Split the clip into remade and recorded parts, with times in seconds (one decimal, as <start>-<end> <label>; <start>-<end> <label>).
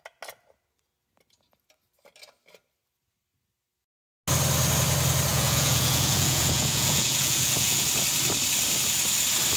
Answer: 0.0-5.3 recorded; 5.3-7.9 remade; 7.9-9.6 recorded